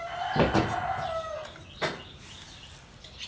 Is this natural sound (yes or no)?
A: yes